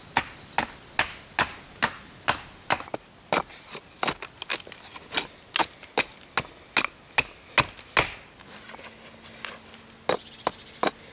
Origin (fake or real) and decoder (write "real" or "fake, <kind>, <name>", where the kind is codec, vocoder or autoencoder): real